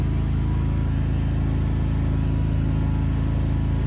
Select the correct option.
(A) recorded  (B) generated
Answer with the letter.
A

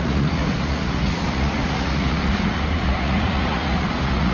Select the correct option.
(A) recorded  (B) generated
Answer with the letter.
B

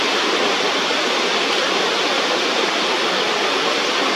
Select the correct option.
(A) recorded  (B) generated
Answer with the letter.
A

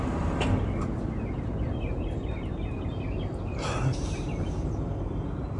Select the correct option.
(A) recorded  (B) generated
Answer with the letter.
A